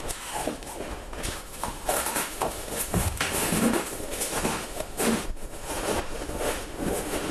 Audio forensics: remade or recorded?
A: remade